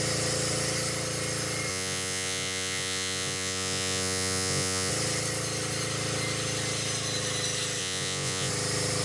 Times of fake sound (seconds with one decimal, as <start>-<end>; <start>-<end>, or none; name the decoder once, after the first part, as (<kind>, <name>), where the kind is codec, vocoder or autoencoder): 1.7-4.9 (vocoder, Vocos); 7.8-8.5